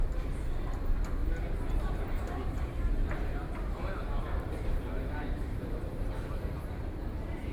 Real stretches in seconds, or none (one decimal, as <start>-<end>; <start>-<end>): 1.2-1.9